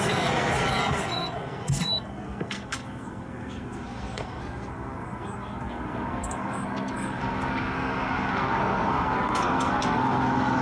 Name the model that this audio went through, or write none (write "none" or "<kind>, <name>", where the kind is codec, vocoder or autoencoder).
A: codec, SNAC